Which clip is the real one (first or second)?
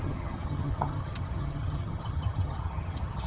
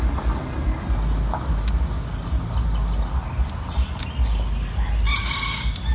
second